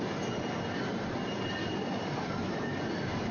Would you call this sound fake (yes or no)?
no